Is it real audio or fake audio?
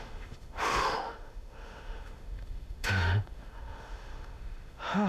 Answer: fake